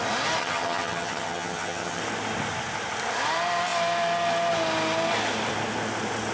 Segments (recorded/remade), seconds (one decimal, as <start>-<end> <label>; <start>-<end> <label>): 0.0-0.4 recorded; 0.4-2.0 remade; 2.0-6.3 recorded